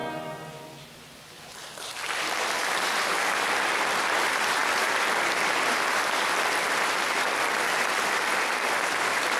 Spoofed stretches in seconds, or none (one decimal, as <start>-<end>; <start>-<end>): 2.4-9.4